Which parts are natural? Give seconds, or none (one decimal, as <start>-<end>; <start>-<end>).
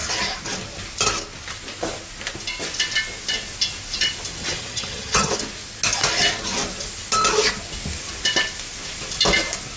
0.0-4.4; 5.3-9.8